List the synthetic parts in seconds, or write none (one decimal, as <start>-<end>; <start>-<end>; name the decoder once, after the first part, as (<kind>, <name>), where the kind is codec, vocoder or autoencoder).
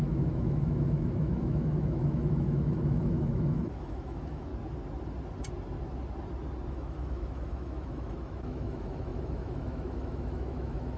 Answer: 0.0-4.5 (autoencoder, DAC-VAE); 6.7-11.0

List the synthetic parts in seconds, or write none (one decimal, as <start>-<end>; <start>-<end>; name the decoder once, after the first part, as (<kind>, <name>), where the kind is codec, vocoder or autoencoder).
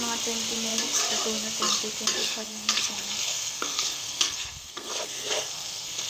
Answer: 2.2-6.1 (codec, SNAC)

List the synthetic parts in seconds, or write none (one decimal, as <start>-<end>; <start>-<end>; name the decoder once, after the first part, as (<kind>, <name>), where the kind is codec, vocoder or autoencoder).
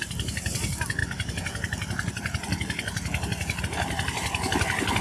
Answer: none